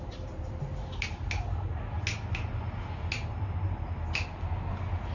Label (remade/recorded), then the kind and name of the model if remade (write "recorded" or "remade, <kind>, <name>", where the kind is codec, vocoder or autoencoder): recorded